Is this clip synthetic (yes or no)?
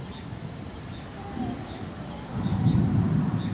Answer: no